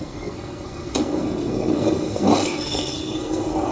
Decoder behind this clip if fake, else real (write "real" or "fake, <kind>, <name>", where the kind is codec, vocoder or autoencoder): fake, codec, SNAC